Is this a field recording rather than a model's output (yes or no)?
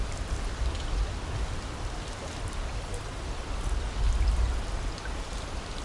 yes